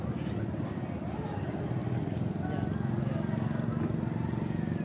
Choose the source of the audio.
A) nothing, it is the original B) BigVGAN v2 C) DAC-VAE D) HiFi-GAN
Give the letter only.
A